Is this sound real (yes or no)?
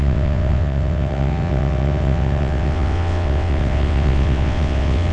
no